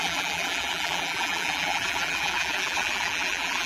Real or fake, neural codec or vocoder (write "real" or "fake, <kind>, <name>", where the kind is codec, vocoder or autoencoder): fake, vocoder, BigVGAN v2